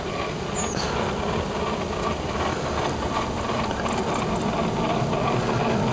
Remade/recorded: recorded